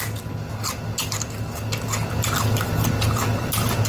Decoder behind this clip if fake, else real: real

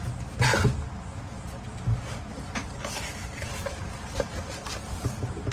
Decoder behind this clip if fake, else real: real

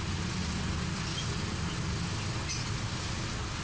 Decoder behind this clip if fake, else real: real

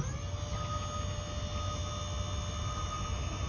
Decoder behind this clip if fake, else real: real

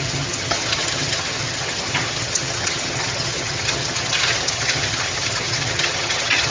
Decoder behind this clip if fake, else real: fake, vocoder, HiFi-GAN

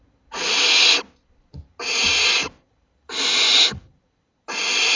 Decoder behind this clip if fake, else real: real